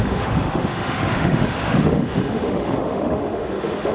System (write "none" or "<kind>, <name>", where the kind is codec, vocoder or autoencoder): autoencoder, DAC-VAE